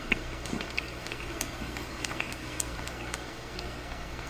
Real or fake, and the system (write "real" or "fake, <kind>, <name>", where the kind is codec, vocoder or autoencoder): fake, codec, SNAC